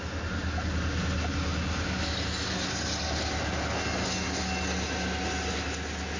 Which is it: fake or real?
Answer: real